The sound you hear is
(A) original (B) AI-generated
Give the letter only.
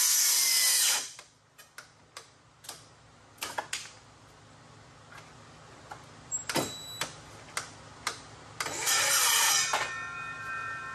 A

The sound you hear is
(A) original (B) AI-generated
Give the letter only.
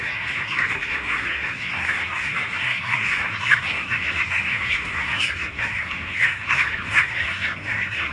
B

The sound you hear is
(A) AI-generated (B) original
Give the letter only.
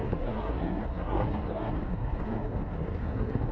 A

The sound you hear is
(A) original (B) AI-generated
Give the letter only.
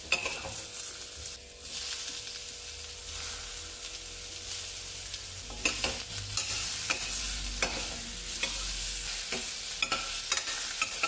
A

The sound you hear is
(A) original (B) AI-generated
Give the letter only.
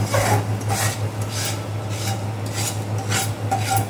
A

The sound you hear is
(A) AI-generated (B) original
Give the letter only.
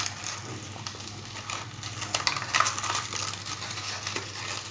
B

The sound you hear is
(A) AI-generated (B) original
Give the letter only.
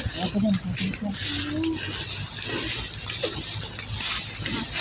B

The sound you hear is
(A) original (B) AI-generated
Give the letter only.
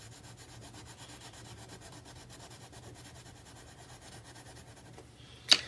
A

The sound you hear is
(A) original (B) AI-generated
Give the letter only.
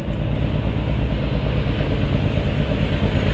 A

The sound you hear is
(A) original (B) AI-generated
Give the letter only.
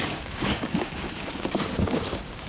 B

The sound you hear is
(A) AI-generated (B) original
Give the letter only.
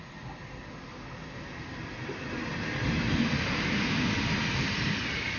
B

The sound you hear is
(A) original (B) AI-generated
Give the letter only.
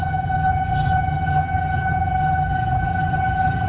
B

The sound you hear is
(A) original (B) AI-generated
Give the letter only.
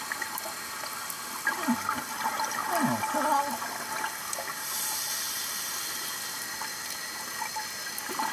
A